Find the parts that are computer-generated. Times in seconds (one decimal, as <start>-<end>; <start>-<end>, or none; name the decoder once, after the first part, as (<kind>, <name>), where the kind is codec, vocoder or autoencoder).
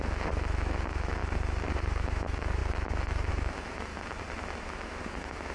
0.0-1.2 (autoencoder, DAC-VAE); 1.7-3.9; 4.6-5.5